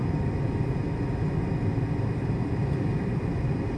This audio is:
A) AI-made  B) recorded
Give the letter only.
B